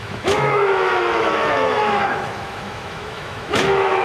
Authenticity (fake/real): fake